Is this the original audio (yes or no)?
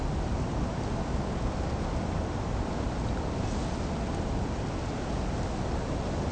yes